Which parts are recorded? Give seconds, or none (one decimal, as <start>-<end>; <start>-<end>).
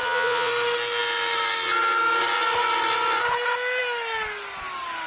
0.5-5.1